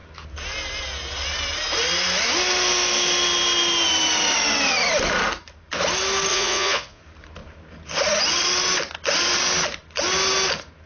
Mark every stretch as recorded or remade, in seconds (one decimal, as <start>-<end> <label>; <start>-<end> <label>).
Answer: 0.0-6.3 recorded; 6.3-7.0 remade; 7.0-10.9 recorded